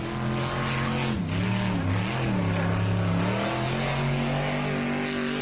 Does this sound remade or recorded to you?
recorded